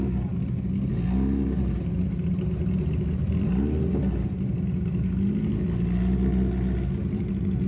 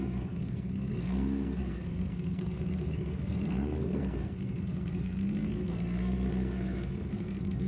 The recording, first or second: first